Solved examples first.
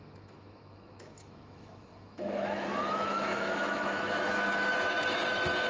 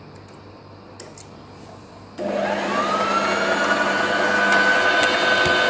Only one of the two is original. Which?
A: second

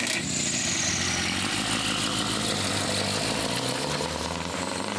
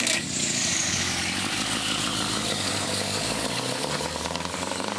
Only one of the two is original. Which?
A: first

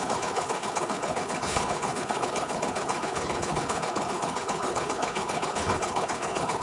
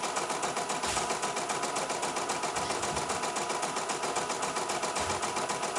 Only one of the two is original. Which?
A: second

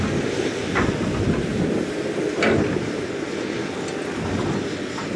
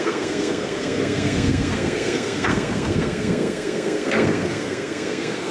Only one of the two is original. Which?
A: first